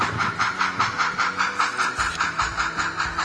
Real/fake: real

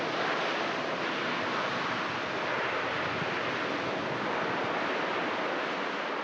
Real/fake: real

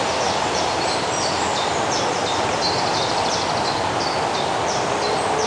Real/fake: real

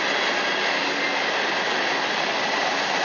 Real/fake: real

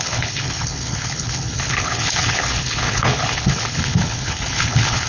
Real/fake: fake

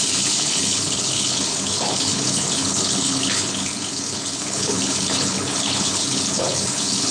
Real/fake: fake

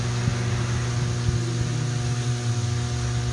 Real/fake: real